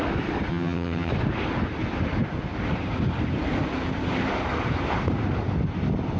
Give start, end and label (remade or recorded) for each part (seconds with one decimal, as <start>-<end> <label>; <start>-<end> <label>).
0.0-0.5 recorded; 0.5-1.1 remade; 1.1-6.2 recorded